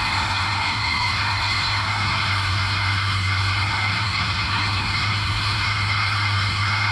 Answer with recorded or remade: remade